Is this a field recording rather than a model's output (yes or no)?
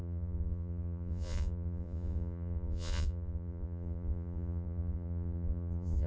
no